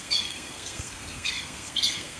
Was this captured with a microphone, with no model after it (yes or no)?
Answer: no